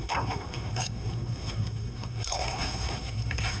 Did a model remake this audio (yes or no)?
yes